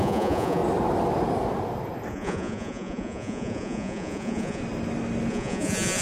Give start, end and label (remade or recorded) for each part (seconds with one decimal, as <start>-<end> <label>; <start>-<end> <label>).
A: 0.0-0.6 remade; 0.6-2.1 recorded; 2.1-4.6 remade; 4.6-5.3 recorded; 5.3-6.0 remade